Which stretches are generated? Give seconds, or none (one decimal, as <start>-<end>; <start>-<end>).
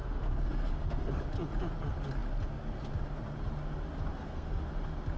0.0-1.1; 4.1-4.6